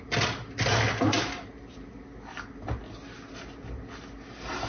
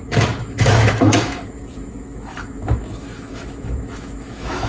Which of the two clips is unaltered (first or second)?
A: first